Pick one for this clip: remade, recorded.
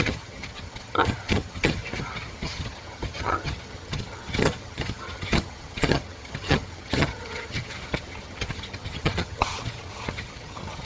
remade